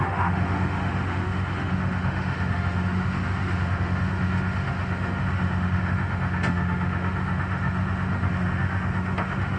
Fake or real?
fake